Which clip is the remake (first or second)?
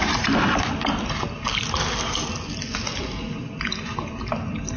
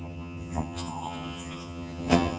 second